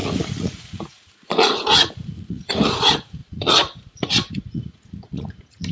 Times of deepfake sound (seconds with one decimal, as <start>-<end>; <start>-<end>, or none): 0.0-5.7